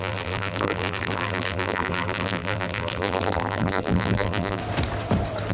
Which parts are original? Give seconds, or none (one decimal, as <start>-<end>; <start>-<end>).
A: 4.6-5.5